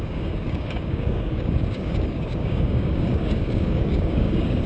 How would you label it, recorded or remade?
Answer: remade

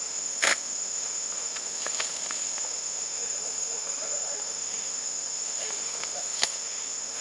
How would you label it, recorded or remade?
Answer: remade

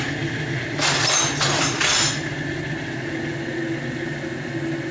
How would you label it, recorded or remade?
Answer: recorded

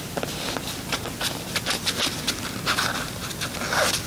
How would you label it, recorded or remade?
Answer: recorded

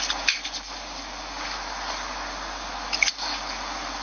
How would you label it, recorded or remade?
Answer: recorded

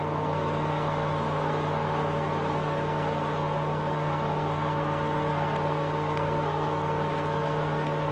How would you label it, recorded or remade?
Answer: remade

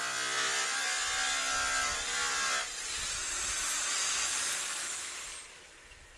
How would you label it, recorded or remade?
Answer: recorded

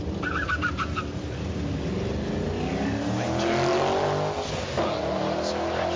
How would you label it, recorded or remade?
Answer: recorded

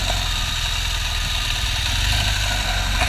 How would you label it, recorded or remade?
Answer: recorded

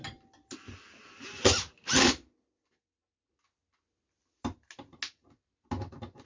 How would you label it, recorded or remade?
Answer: recorded